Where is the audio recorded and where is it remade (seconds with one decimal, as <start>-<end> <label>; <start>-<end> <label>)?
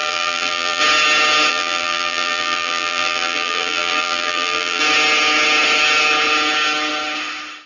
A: 0.0-0.8 remade; 0.8-1.5 recorded; 1.5-4.8 remade; 4.8-7.7 recorded